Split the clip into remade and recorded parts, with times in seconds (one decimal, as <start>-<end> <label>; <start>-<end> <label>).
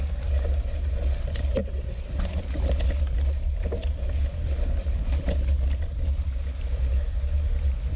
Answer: 0.0-8.0 recorded